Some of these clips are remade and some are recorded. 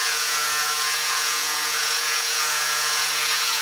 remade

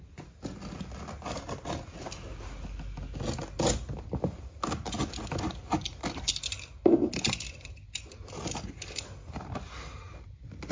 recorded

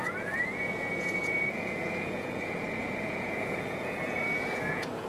remade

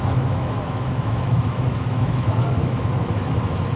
remade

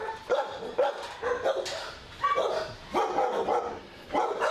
recorded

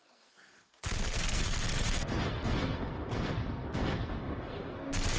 remade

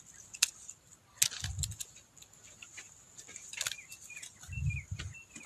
recorded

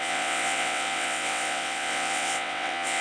remade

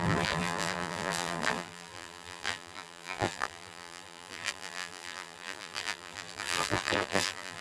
remade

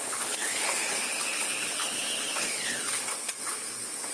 remade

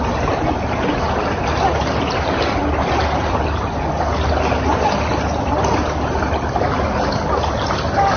recorded